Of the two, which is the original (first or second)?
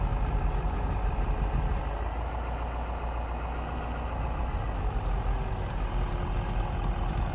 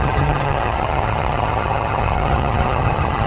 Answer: first